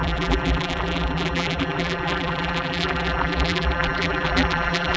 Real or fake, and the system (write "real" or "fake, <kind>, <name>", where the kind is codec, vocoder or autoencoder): fake, vocoder, BigVGAN v2